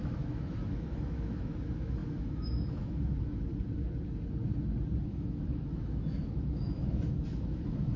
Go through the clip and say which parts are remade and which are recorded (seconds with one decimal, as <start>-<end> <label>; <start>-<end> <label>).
0.0-3.5 remade; 3.5-5.0 recorded; 5.0-8.0 remade